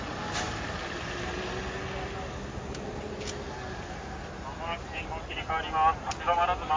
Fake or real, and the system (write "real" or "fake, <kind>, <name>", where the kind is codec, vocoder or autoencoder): real